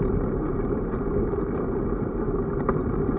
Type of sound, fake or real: fake